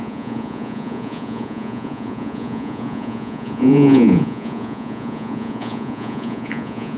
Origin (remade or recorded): remade